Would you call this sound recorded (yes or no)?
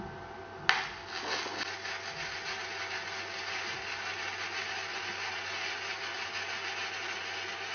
yes